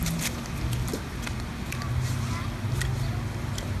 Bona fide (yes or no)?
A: yes